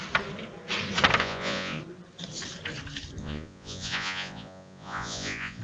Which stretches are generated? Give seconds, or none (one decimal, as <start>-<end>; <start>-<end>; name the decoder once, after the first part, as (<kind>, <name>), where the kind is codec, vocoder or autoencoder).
1.2-1.8 (vocoder, Vocos); 3.2-5.6